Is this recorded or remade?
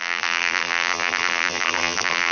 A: remade